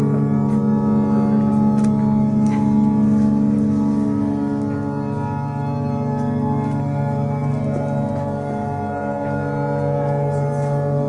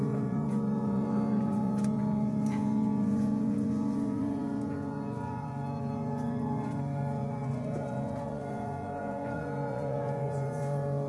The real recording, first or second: first